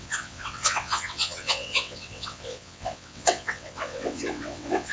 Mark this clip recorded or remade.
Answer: remade